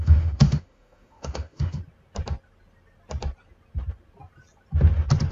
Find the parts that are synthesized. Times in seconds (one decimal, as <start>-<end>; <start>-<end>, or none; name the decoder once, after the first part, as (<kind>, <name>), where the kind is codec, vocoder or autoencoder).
0.0-1.8 (autoencoder, DAC-VAE)